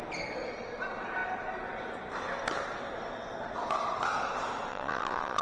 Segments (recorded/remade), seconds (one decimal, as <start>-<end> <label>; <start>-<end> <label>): 0.0-4.7 recorded; 4.7-5.4 remade